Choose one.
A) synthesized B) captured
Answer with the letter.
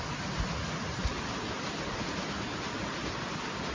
B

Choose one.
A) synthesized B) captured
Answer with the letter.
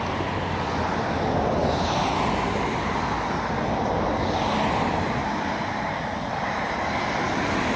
B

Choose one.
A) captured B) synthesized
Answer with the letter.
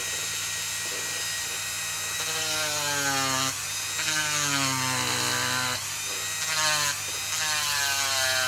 A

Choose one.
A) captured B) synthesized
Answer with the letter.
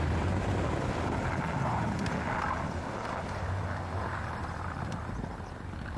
A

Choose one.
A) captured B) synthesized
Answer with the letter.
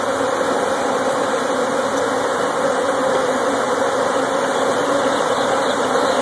A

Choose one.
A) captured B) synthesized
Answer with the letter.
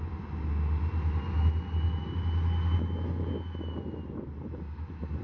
A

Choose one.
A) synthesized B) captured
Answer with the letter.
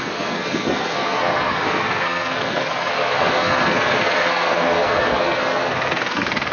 A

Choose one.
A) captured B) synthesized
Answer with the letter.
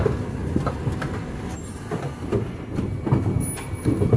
A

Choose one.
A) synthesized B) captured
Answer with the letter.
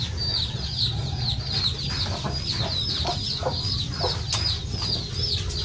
B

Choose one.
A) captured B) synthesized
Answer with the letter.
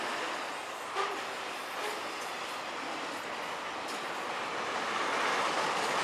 A